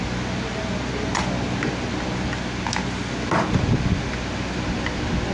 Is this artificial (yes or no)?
no